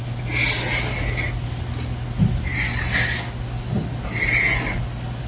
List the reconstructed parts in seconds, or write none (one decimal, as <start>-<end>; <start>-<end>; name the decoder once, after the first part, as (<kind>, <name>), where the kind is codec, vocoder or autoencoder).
none